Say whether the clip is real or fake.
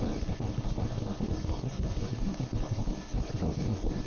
fake